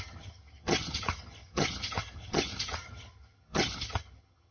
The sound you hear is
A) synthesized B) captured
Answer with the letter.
A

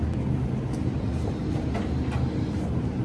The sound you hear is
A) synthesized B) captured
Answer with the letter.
B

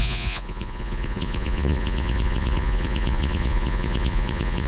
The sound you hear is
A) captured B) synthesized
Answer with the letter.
B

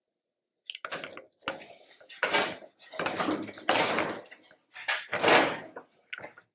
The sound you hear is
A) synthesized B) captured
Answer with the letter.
B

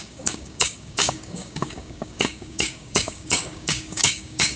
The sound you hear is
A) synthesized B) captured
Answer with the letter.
A